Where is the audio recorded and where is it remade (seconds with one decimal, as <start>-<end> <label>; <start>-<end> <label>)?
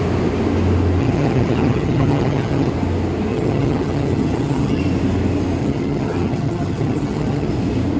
0.0-1.0 recorded; 1.0-2.7 remade; 2.7-3.3 recorded; 3.3-4.8 remade; 4.8-5.6 recorded; 5.6-7.5 remade; 7.5-8.0 recorded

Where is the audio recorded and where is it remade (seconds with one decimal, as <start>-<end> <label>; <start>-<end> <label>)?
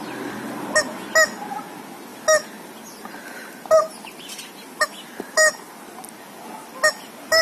0.0-7.4 recorded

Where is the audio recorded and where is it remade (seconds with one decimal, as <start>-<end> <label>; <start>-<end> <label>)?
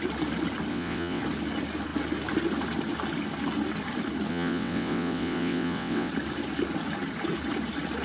0.0-0.7 recorded; 0.7-1.2 remade; 1.2-4.3 recorded; 4.3-6.1 remade; 6.1-8.0 recorded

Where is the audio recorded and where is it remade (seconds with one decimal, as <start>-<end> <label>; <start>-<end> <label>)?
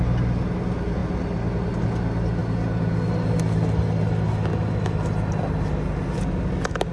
0.0-6.9 recorded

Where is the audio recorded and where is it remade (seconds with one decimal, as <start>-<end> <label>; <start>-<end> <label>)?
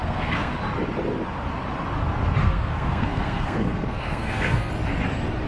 0.0-0.5 remade; 0.5-2.4 recorded; 2.4-4.7 remade; 4.7-5.5 recorded